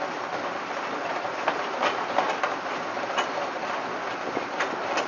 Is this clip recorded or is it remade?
recorded